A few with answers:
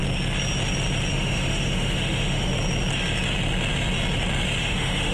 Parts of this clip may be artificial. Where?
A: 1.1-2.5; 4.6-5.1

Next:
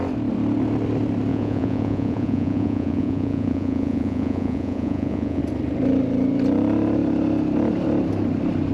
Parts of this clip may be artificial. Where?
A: 1.3-5.4

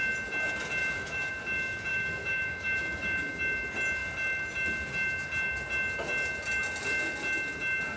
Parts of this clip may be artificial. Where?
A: 0.8-1.3; 1.9-3.4